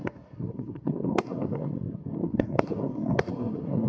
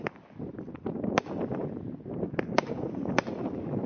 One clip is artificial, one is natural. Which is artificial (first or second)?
first